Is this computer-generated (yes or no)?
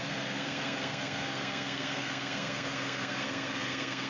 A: yes